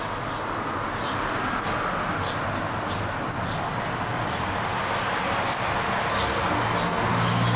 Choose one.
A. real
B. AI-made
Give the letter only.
A